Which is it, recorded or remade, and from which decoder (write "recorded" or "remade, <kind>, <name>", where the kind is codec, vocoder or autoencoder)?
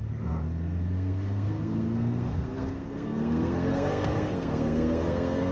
remade, codec, SNAC